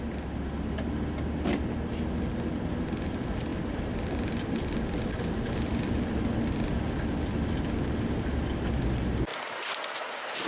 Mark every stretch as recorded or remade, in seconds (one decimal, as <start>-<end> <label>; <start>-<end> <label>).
0.0-3.5 recorded; 3.5-6.1 remade; 6.1-9.3 recorded; 9.3-9.8 remade; 9.8-10.5 recorded